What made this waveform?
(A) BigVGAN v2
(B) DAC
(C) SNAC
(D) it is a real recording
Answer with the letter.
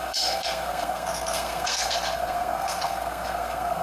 C